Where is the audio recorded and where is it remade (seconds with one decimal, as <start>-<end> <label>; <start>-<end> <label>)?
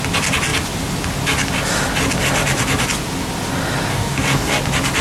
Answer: 0.0-3.9 recorded; 3.9-4.6 remade; 4.6-5.0 recorded